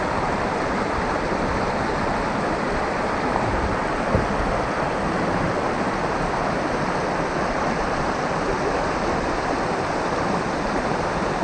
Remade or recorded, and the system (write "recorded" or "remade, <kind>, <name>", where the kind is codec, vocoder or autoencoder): remade, vocoder, BigVGAN v2